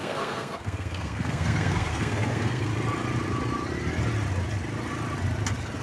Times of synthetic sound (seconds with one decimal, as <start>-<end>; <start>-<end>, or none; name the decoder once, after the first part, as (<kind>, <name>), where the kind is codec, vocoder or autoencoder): 0.0-2.7 (codec, SNAC)